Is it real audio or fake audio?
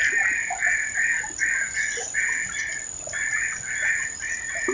real